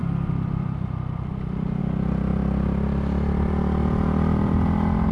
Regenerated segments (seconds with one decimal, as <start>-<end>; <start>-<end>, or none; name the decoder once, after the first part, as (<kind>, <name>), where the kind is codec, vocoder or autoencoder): 0.0-1.8 (vocoder, BigVGAN v2); 2.3-3.5